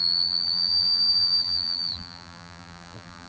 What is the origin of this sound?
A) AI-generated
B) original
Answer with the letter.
A